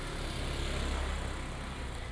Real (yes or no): yes